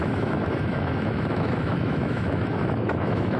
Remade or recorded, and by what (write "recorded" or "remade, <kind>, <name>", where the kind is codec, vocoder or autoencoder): remade, autoencoder, DAC-VAE